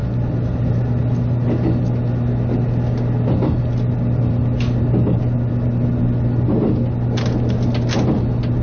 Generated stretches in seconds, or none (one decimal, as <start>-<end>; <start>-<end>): none